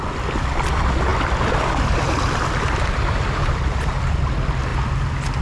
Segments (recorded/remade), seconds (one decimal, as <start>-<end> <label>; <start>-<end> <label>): 0.0-1.1 recorded; 1.1-4.3 remade; 4.3-4.7 recorded; 4.7-5.4 remade